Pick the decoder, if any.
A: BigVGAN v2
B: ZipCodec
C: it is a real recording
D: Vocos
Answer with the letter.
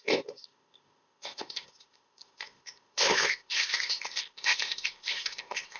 B